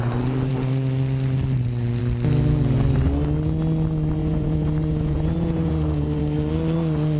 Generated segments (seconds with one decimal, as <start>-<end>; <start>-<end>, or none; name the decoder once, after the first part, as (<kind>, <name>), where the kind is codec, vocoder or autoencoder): 4.2-6.2 (vocoder, Vocos)